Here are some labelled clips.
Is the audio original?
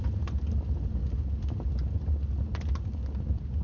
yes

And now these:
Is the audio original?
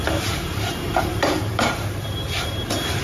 no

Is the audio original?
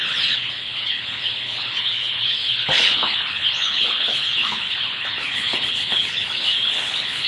no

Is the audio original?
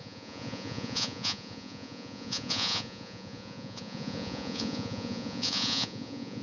no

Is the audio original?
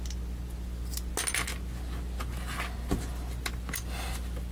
yes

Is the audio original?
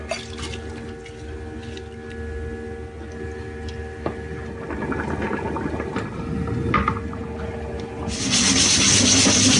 yes